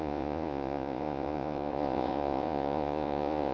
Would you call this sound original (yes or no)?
no